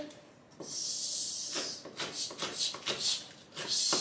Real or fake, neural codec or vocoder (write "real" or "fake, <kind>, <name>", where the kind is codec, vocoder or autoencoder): real